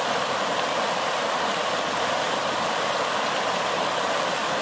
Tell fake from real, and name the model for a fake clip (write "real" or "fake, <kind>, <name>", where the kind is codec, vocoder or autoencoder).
real